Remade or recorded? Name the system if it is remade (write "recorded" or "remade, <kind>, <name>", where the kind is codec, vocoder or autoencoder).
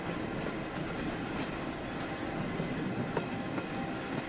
recorded